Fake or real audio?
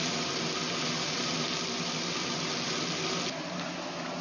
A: real